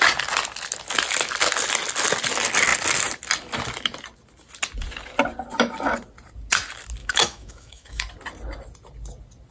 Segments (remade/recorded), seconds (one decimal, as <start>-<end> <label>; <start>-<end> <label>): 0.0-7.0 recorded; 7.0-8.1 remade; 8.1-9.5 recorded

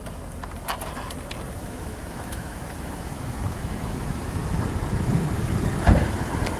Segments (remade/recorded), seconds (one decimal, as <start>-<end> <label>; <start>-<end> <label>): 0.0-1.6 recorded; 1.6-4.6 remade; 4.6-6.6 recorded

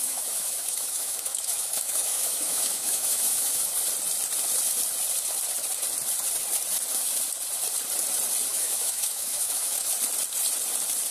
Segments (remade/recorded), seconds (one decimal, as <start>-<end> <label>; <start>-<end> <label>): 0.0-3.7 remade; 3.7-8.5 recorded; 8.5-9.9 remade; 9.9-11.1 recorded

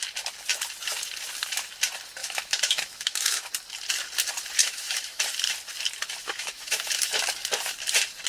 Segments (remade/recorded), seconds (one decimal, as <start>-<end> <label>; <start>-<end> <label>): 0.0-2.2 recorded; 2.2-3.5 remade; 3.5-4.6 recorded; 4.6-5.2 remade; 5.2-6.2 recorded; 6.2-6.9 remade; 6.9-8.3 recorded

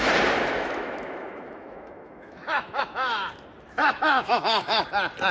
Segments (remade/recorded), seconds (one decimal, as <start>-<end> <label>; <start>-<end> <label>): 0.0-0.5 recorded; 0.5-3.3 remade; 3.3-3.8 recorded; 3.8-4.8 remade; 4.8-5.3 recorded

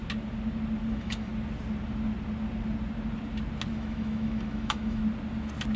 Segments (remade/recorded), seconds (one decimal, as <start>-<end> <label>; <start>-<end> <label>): 0.0-0.9 recorded; 0.9-1.3 remade; 1.3-3.7 recorded; 3.7-5.0 remade; 5.0-5.8 recorded